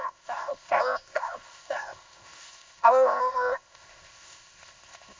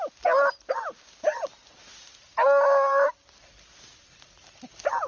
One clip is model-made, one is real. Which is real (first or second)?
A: second